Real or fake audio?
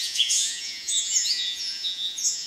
fake